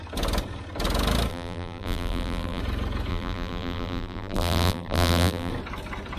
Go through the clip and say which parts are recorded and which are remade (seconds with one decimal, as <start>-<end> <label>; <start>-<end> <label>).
0.0-1.3 recorded; 1.3-2.6 remade; 2.6-3.1 recorded; 3.1-5.5 remade; 5.5-6.2 recorded